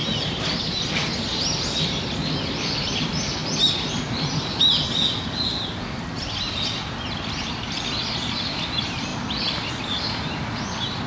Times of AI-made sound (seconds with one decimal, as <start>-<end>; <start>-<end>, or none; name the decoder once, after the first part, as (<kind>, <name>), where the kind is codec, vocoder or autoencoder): 0.0-0.7 (vocoder, BigVGAN v2)